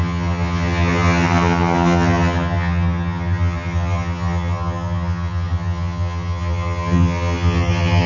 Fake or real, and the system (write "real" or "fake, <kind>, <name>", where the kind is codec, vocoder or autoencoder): fake, vocoder, HiFi-GAN